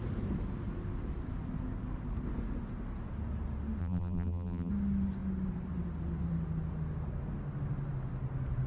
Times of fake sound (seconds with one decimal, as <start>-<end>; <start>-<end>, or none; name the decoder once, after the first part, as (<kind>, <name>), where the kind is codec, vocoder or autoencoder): 3.8-4.7 (vocoder, BigVGAN v2)